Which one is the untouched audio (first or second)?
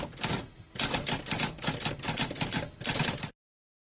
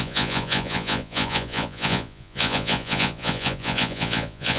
first